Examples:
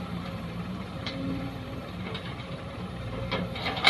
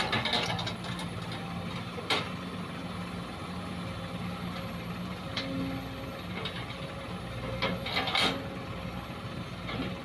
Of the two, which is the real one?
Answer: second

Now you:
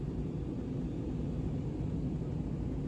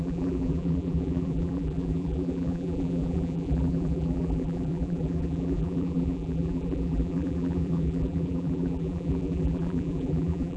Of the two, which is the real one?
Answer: first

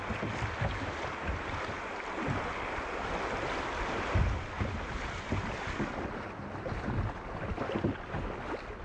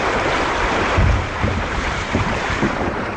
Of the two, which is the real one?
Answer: first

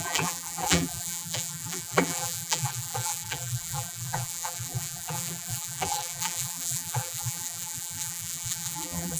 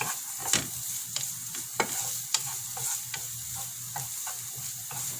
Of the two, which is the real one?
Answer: second